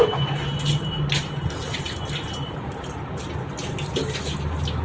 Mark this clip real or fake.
real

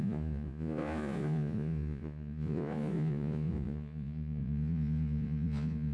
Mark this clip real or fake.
fake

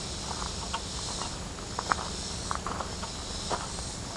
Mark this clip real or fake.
real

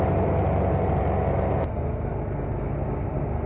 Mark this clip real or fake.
real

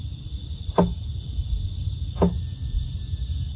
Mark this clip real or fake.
real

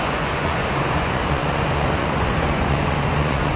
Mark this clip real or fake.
fake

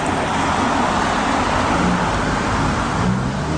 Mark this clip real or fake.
real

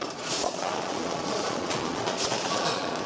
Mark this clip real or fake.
fake